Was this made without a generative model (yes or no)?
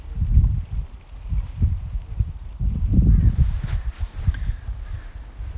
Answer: yes